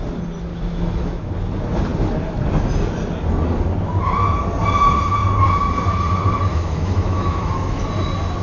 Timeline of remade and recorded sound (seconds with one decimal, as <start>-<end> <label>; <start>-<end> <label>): 0.0-0.5 recorded; 0.5-1.3 remade; 1.3-6.5 recorded; 6.5-7.8 remade; 7.8-8.4 recorded

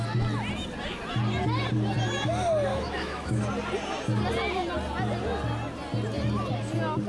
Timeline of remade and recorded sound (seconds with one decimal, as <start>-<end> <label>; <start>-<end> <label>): 0.0-2.7 recorded; 2.7-3.4 remade; 3.4-7.1 recorded